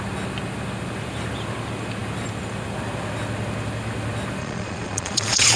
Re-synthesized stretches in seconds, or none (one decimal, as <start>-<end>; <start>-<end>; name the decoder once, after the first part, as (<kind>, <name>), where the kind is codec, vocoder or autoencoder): 4.4-5.6 (vocoder, Vocos)